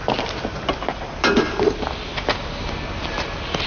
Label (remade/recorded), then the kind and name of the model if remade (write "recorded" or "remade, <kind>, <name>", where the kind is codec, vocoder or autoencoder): recorded